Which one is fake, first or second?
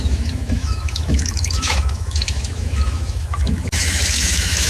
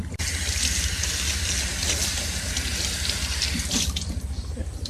first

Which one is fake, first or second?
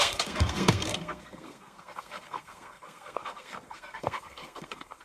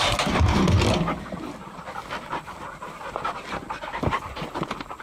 first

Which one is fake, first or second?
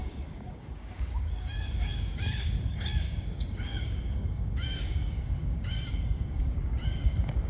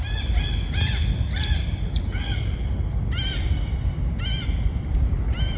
first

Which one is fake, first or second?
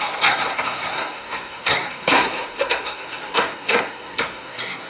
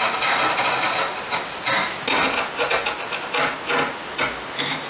first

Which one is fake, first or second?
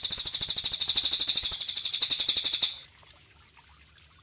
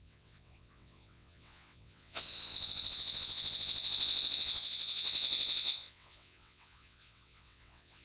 second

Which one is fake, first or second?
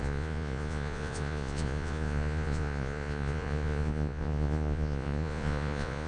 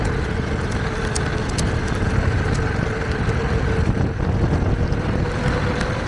first